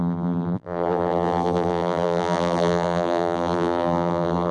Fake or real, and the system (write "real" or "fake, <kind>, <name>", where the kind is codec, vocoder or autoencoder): fake, vocoder, BigVGAN v2